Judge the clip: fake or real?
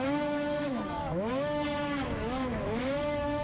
fake